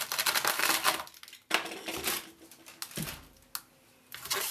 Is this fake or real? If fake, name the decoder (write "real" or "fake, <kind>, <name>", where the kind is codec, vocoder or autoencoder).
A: real